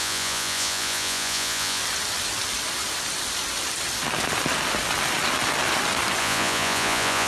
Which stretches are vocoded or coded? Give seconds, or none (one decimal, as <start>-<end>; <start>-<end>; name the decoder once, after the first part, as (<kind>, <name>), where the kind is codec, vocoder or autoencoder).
0.0-1.8 (vocoder, Vocos); 6.2-7.3